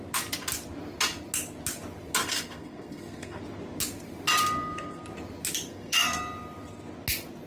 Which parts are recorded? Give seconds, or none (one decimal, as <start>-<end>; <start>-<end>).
0.0-2.2; 3.4-4.4; 5.0-5.7; 6.2-7.5